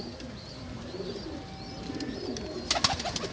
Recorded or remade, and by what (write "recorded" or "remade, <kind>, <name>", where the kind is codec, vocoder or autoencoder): recorded